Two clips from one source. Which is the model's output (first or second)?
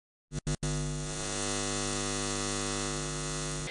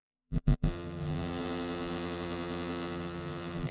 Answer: second